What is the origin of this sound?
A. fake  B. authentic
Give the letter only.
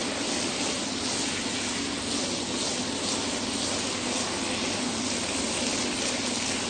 B